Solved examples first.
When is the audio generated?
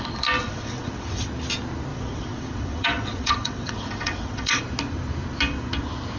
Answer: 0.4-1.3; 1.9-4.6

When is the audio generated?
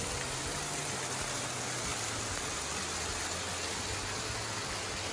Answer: none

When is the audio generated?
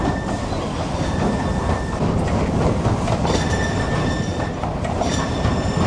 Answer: none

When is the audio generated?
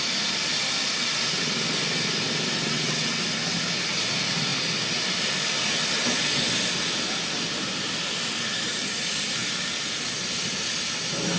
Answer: 2.6-3.2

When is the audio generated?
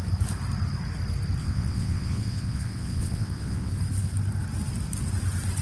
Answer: 1.4-3.7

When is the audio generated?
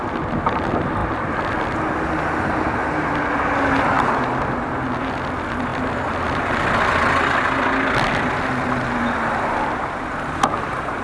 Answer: none